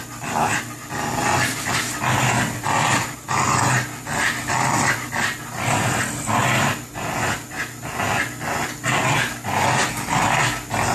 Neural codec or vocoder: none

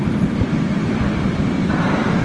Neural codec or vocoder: vocoder, BigVGAN v2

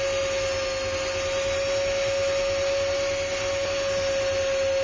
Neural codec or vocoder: none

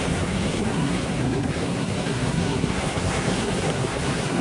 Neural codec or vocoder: codec, SNAC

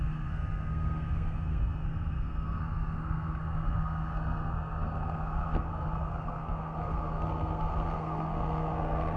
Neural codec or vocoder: codec, SNAC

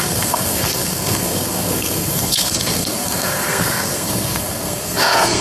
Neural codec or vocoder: codec, SNAC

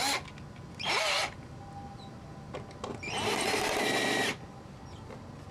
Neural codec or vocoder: none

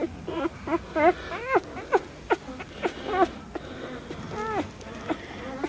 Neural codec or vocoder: none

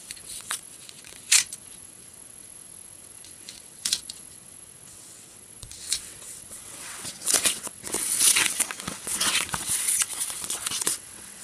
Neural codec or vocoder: vocoder, WaveNeXt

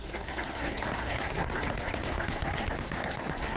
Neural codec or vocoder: codec, SNAC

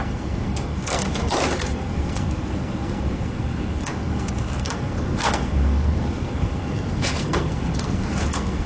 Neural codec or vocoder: codec, SNAC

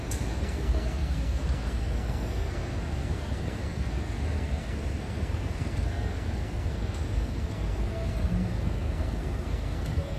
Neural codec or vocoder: codec, SNAC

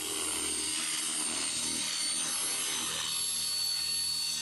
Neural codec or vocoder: none